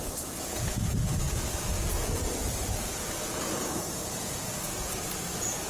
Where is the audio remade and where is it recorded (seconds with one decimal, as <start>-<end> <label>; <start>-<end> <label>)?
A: 0.0-5.7 remade

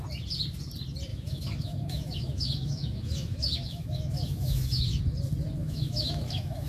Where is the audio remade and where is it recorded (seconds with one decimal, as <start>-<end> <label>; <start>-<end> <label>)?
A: 0.0-1.1 recorded; 1.1-5.0 remade; 5.0-5.6 recorded; 5.6-6.7 remade

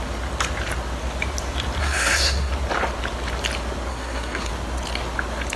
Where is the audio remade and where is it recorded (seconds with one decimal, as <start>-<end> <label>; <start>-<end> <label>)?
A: 0.0-1.8 recorded; 1.8-2.5 remade; 2.5-3.9 recorded; 3.9-4.5 remade; 4.5-5.6 recorded

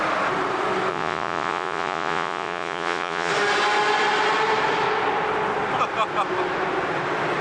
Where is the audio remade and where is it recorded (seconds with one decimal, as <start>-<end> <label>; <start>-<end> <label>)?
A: 0.0-0.9 recorded; 0.9-3.3 remade; 3.3-7.4 recorded

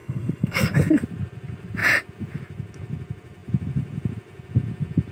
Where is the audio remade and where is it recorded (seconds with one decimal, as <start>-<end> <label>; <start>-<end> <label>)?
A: 0.0-1.0 remade; 1.0-5.1 recorded

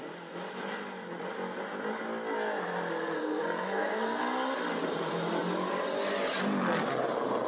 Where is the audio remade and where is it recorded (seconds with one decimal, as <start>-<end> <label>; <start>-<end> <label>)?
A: 0.0-3.2 recorded; 3.2-4.2 remade; 4.2-7.5 recorded

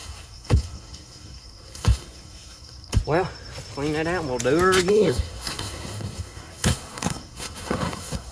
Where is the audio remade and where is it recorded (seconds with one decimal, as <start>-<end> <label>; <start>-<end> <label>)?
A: 0.0-3.0 remade; 3.0-4.9 recorded; 4.9-8.3 remade